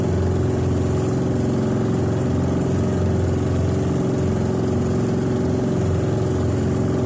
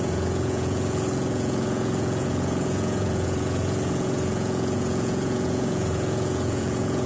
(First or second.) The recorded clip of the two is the first